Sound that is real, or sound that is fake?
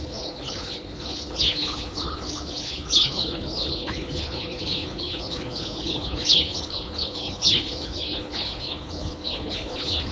fake